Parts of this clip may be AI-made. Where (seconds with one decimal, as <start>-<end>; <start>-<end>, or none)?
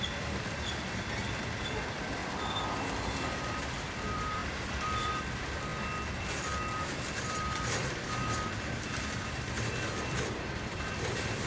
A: 0.0-2.2; 3.8-5.7; 6.7-11.5